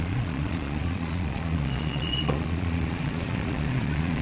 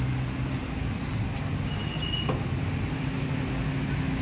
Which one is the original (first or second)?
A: second